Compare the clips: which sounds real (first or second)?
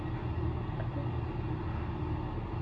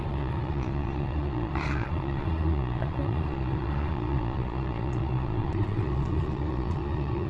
first